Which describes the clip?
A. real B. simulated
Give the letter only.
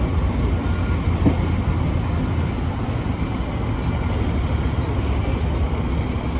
A